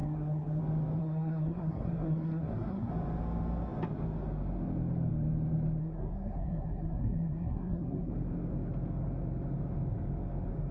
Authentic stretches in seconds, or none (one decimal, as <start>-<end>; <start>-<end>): 0.6-1.0; 2.9-5.8; 8.1-10.7